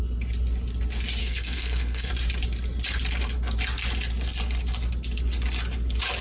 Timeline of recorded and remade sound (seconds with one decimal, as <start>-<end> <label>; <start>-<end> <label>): 0.0-1.2 recorded; 1.2-2.1 remade; 2.1-6.2 recorded